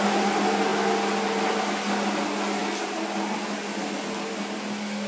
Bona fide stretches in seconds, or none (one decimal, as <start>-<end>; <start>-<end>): 0.0-5.1